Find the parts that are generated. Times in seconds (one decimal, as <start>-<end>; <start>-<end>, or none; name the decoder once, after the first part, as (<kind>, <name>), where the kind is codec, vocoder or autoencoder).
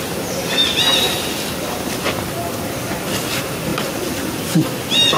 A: none